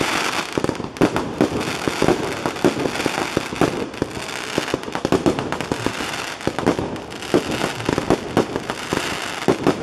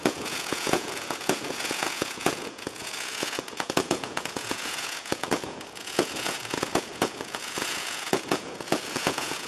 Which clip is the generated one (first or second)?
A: second